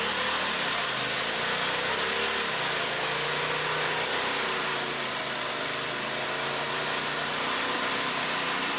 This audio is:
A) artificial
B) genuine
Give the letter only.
B